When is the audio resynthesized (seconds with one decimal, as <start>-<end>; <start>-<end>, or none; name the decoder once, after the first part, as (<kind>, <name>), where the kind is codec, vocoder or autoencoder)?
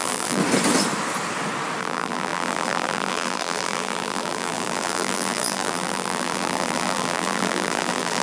0.0-0.4 (vocoder, BigVGAN v2); 1.8-8.2